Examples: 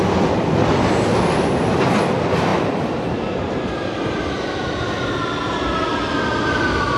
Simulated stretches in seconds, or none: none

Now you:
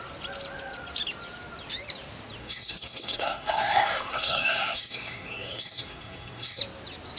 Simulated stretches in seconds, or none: 2.4-6.6 (codec, SNAC)

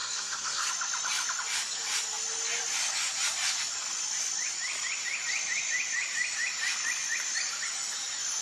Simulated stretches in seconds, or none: 0.0-0.7 (codec, SNAC)

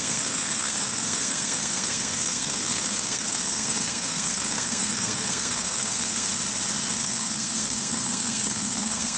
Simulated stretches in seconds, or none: 0.0-6.3 (codec, SNAC); 6.9-9.2

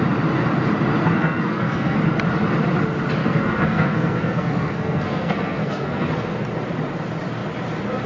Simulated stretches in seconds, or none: 1.0-2.0 (codec, SNAC); 3.2-6.1